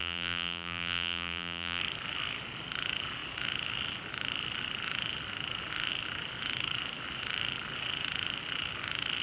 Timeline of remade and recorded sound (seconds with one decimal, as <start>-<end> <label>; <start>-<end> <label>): 0.0-1.8 remade; 1.8-9.2 recorded